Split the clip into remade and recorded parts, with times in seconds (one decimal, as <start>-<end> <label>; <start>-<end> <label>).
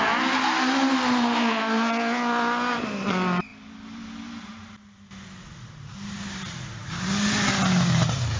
0.0-8.4 recorded